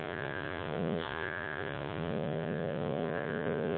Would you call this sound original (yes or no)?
no